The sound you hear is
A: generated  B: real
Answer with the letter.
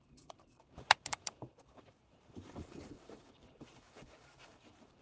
A